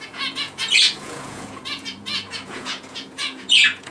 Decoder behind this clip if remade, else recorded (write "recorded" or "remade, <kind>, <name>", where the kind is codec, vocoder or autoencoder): remade, vocoder, Vocos